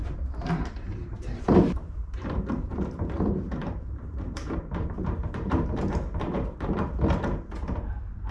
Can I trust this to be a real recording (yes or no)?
no